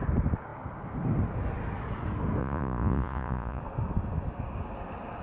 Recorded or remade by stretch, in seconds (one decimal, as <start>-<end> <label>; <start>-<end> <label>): 0.0-2.4 recorded; 2.4-3.6 remade; 3.6-5.2 recorded